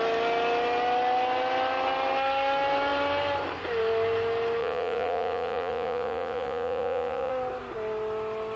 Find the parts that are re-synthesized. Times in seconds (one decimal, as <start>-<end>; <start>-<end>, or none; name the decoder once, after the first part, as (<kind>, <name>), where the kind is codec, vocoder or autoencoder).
4.6-7.3 (vocoder, Vocos)